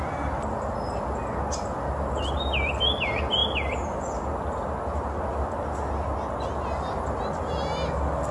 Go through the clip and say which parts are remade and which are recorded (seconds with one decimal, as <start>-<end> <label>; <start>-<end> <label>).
0.0-8.3 recorded